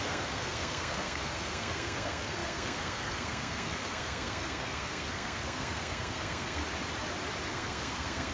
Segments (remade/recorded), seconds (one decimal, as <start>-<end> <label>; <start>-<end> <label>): 0.0-6.6 remade; 6.6-7.5 recorded; 7.5-8.3 remade